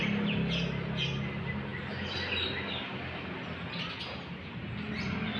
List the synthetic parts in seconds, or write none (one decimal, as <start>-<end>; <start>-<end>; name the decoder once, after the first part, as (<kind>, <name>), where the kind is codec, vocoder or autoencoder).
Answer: none